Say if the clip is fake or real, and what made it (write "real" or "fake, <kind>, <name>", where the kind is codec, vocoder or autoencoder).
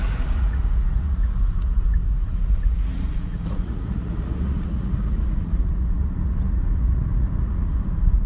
fake, vocoder, Vocos